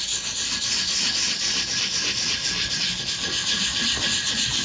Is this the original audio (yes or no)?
yes